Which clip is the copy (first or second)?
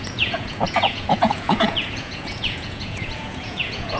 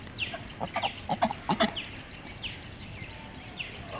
first